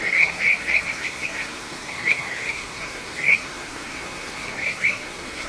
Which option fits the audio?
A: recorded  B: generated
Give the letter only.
B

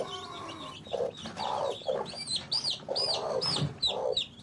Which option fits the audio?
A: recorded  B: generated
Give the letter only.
A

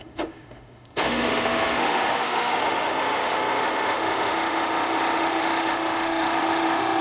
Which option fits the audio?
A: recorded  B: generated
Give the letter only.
B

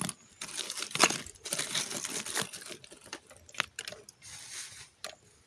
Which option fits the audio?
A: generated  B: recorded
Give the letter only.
B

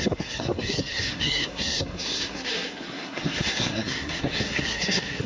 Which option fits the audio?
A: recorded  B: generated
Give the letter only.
B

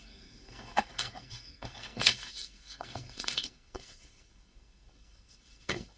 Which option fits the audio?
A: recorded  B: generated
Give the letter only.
B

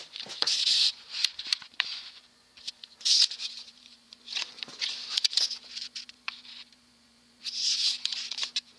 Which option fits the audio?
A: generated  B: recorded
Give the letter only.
A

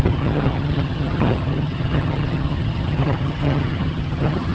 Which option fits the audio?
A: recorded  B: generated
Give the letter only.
B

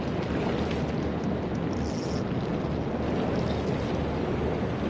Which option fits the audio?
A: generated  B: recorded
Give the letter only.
B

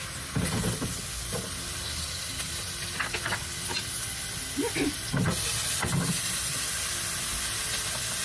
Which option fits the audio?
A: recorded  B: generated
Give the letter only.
B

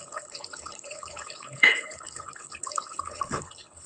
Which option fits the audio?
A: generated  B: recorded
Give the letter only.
A